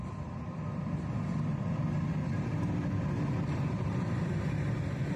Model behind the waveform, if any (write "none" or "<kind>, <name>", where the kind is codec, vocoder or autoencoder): vocoder, BigVGAN v2